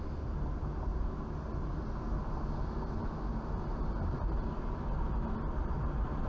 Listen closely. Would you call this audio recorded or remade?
recorded